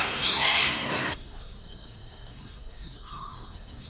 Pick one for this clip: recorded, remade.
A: remade